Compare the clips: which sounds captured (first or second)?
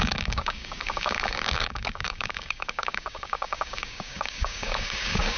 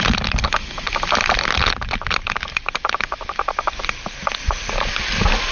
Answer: second